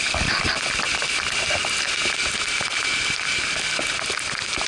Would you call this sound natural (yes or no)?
yes